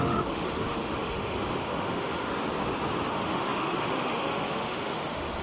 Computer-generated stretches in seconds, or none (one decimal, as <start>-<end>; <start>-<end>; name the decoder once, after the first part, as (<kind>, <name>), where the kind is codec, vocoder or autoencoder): 0.0-2.3 (autoencoder, DAC-VAE); 3.1-5.4